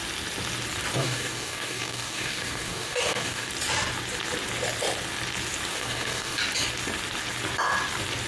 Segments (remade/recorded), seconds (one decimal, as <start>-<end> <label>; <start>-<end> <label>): 0.0-1.0 recorded; 1.0-3.5 remade; 3.5-5.7 recorded; 5.7-6.4 remade; 6.4-8.3 recorded